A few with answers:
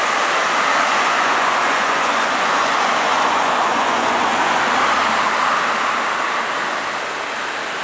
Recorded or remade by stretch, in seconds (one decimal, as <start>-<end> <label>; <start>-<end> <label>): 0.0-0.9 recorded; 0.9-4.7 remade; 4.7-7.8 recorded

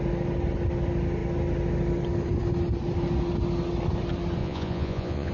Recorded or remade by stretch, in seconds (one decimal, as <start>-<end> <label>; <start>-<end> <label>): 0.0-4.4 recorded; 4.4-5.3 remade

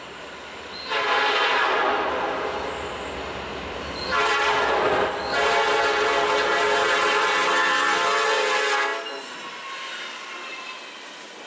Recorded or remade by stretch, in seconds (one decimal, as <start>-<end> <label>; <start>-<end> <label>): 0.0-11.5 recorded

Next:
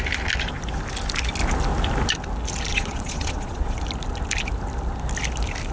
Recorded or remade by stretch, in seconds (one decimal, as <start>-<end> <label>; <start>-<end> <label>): 0.0-2.7 recorded; 2.7-3.8 remade; 3.8-5.7 recorded

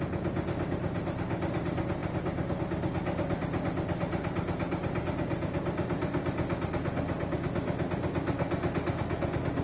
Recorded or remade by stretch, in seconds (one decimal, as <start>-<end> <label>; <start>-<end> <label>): 0.0-9.6 recorded

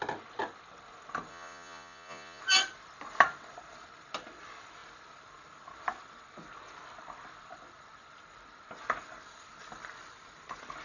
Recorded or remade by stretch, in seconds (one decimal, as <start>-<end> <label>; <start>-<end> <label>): 0.0-1.3 recorded; 1.3-2.4 remade; 2.4-10.8 recorded